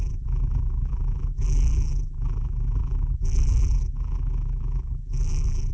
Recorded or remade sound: remade